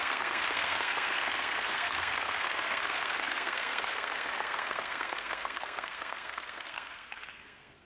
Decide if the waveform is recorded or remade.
remade